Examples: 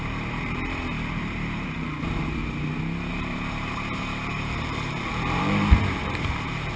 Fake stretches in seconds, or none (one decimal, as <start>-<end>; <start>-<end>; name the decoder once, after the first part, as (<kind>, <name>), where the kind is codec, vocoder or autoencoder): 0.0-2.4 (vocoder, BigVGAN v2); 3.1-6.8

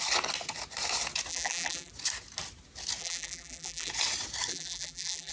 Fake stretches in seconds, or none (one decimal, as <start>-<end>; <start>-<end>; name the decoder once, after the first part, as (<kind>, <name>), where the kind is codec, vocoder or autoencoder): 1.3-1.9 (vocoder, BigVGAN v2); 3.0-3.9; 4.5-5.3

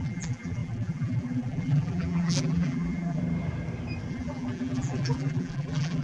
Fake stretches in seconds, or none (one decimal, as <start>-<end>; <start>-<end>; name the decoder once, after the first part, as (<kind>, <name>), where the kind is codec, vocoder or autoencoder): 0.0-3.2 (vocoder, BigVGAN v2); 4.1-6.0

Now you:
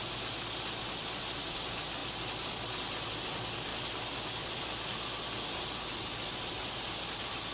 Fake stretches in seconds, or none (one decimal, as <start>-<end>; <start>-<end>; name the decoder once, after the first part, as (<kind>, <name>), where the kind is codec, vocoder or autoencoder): 2.0-3.1 (vocoder, BigVGAN v2)

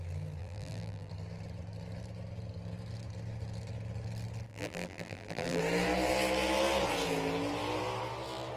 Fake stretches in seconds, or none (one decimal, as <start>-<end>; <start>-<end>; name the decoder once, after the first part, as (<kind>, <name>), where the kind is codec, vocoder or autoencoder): 0.4-1.1 (vocoder, BigVGAN v2); 4.5-5.6

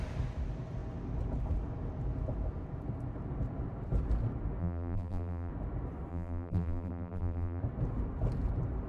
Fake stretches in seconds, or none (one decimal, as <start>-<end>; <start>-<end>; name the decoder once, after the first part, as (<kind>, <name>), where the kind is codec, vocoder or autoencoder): 4.6-5.5 (vocoder, BigVGAN v2); 6.1-7.6

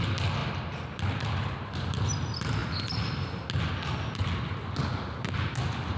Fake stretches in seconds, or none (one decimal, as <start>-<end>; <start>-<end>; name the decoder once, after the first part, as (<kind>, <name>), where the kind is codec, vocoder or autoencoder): none

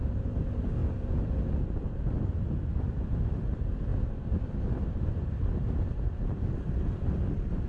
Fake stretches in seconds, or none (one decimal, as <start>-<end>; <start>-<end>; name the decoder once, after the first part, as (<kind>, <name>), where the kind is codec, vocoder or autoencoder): 0.0-0.8 (vocoder, BigVGAN v2); 3.5-7.7